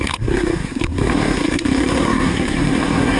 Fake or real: fake